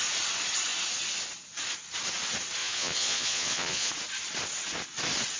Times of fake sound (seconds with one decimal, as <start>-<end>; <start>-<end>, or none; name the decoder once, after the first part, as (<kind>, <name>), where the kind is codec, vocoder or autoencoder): 2.6-3.9 (vocoder, Vocos)